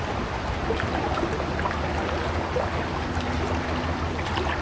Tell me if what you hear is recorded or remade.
recorded